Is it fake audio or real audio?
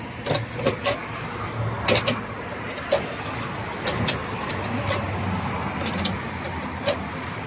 real